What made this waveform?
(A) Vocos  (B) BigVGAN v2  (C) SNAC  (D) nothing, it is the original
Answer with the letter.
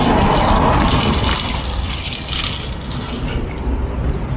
D